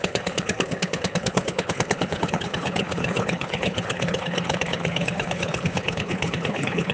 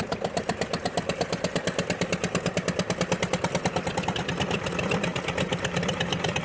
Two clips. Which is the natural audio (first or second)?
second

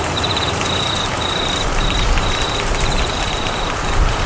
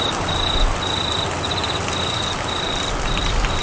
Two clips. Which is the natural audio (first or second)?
second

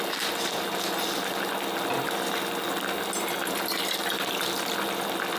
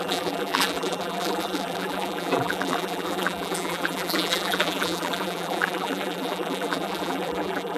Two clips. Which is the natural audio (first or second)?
first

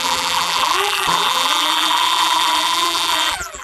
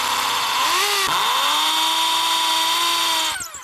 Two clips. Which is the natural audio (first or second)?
second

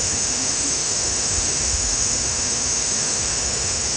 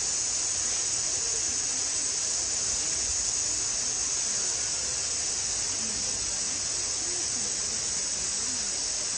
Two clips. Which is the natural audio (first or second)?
second